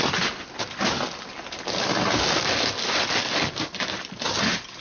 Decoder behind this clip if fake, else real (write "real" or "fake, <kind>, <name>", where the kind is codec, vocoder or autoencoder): real